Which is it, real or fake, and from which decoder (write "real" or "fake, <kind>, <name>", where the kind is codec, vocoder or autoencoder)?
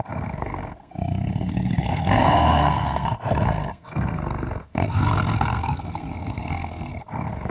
fake, codec, SNAC